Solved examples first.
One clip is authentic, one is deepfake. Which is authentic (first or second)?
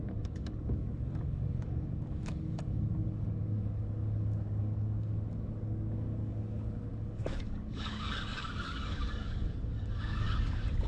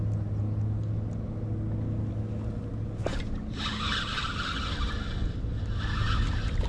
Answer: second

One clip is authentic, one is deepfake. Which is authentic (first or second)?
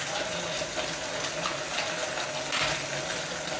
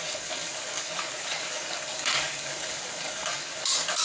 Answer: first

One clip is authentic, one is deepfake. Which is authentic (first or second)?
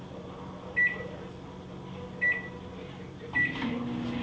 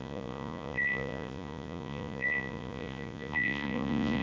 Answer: first